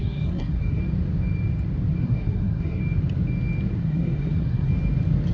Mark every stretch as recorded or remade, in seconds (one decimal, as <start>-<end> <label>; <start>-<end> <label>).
0.0-0.8 remade; 0.8-2.0 recorded; 2.0-2.8 remade; 2.8-3.8 recorded; 3.8-4.7 remade; 4.7-5.3 recorded